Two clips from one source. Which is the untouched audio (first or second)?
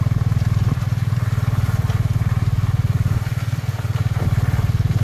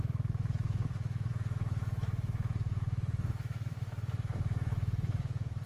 first